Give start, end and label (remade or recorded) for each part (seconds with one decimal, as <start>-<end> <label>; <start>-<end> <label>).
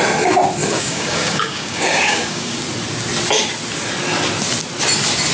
0.0-0.6 recorded; 0.6-2.6 remade; 2.6-5.3 recorded